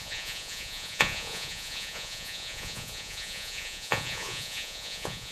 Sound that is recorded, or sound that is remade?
remade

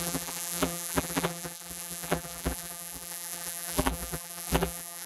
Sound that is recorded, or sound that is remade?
remade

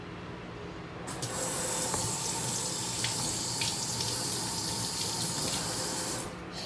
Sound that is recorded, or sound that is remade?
recorded